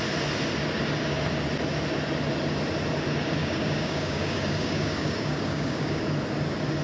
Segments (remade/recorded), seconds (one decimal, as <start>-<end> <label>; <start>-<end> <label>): 0.0-3.4 recorded; 3.4-6.0 remade; 6.0-6.8 recorded